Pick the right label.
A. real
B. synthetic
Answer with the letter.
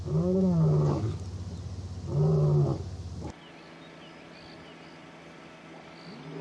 A